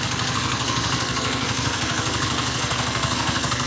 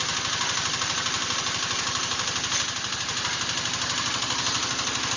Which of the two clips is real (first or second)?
second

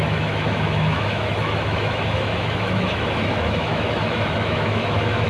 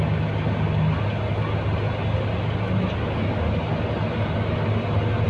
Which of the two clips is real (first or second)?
second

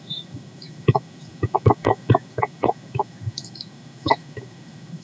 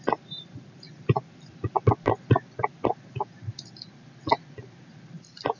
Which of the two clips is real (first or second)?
second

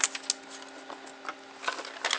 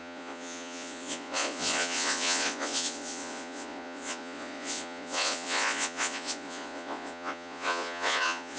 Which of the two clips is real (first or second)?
first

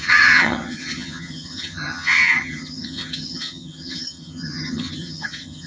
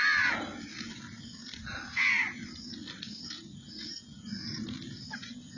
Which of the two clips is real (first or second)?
second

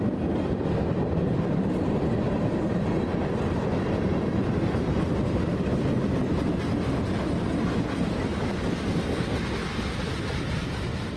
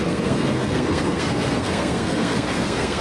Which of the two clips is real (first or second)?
first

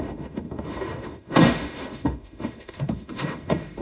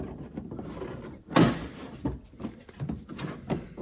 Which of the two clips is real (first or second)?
second